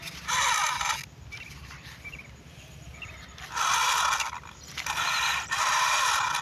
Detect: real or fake real